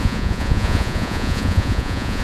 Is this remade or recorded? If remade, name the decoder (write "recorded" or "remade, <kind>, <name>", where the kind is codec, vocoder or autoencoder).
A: remade, vocoder, Vocos